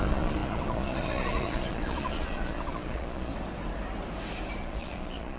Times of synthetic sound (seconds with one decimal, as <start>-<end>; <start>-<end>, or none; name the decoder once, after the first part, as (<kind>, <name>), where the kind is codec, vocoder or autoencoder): 0.0-3.3 (vocoder, Vocos); 4.6-5.4